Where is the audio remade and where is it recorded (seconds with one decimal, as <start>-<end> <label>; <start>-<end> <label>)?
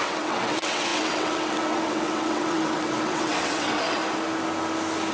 0.0-4.0 remade; 4.0-5.1 recorded